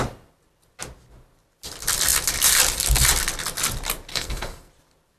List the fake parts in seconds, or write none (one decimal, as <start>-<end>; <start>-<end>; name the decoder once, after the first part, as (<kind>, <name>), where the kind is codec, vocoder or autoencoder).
4.1-4.7 (codec, SNAC)